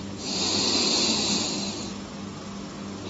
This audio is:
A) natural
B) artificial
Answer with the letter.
A